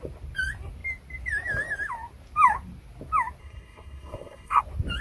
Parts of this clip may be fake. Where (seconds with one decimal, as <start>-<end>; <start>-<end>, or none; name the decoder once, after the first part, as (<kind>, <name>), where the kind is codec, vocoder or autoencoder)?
3.4-4.6 (codec, SNAC)

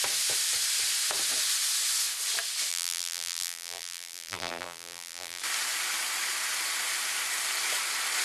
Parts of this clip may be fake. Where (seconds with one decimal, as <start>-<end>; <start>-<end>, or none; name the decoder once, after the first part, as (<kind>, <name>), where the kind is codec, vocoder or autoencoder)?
2.7-5.4 (vocoder, BigVGAN v2)

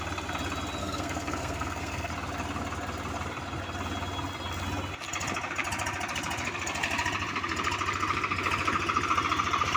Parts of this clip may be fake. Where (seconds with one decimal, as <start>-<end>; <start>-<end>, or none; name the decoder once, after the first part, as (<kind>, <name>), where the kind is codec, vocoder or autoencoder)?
0.8-2.1 (codec, SNAC)

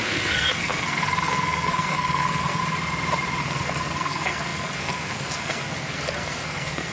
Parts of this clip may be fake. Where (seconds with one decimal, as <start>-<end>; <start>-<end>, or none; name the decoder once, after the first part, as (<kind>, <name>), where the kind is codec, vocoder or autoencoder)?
0.0-2.6 (codec, SNAC); 3.4-6.9

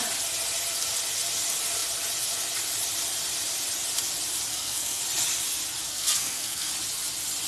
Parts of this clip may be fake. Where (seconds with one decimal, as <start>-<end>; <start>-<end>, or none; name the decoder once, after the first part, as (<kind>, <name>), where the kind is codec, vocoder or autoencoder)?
4.5-5.0 (codec, SNAC); 5.8-6.7

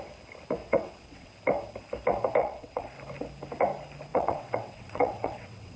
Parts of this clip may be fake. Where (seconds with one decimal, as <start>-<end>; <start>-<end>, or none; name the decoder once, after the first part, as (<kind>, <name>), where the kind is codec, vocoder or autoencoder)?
0.6-1.3 (vocoder, WaveNeXt); 2.4-2.9; 4.1-5.8

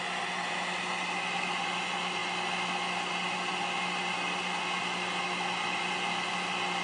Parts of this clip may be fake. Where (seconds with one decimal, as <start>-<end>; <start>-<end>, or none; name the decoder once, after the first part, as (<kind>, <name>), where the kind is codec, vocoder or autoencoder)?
none